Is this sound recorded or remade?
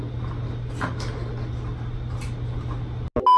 recorded